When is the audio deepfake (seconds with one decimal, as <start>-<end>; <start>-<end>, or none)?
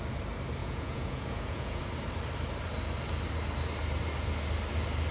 0.6-1.8